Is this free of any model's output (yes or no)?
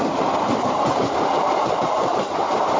no